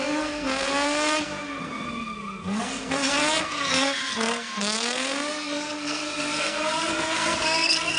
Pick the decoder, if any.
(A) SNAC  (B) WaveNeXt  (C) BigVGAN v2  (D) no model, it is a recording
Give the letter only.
A